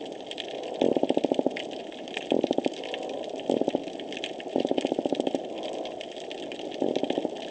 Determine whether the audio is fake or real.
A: real